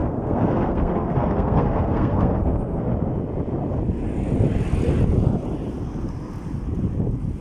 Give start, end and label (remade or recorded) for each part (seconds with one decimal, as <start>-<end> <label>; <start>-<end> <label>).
0.0-2.9 remade; 2.9-7.4 recorded